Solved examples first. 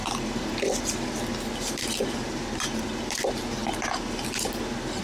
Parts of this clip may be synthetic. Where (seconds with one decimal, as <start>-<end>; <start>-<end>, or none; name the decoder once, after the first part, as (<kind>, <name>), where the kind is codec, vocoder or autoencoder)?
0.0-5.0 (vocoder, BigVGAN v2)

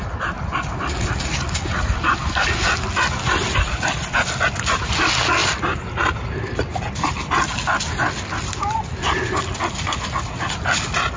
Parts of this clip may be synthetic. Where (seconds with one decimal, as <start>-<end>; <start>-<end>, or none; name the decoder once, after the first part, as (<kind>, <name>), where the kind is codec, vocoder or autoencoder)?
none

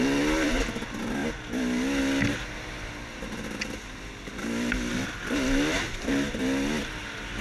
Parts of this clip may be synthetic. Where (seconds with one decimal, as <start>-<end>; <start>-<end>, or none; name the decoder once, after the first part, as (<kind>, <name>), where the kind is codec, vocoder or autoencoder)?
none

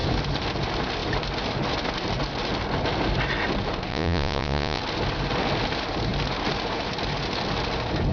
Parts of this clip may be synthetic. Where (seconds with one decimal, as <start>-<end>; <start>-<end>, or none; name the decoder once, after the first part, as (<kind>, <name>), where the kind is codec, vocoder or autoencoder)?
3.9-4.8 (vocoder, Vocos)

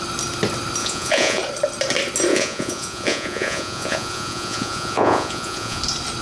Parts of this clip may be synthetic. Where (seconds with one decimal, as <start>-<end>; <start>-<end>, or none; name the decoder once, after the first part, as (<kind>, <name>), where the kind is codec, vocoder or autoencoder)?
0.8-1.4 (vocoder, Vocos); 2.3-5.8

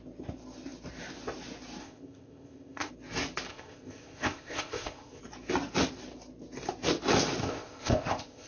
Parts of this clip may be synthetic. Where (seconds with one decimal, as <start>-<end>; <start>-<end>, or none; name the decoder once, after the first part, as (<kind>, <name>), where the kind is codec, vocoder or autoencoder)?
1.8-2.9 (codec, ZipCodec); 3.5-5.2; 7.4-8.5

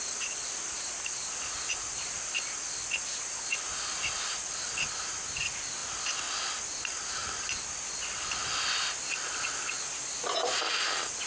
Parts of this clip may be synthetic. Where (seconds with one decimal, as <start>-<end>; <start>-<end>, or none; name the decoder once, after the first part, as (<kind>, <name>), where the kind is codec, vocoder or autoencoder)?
none